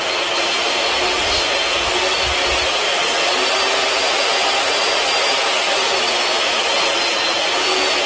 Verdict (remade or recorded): recorded